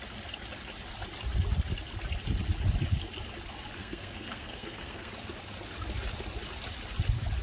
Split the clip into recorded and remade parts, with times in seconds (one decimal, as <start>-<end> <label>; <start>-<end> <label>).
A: 0.0-3.8 recorded; 3.8-5.1 remade; 5.1-7.4 recorded